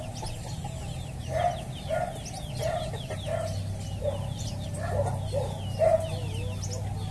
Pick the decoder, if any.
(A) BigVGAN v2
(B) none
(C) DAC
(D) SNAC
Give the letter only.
B